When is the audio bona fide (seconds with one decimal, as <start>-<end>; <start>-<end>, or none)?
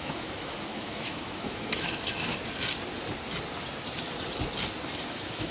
2.3-5.1